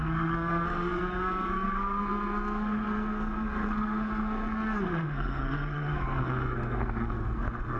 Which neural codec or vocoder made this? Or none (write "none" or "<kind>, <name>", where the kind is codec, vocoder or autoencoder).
codec, SNAC